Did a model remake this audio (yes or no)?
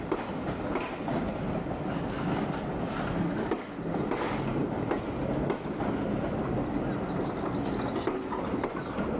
no